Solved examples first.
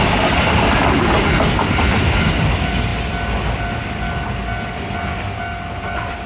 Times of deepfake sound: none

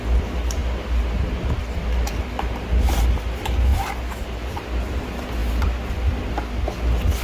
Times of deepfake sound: none

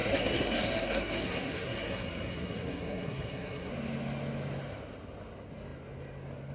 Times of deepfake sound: 0.0-3.7 (codec, SNAC)

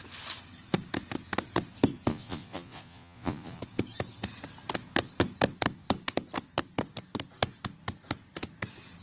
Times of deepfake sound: 2.1-3.6 (vocoder, Vocos)